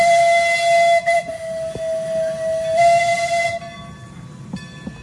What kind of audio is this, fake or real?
real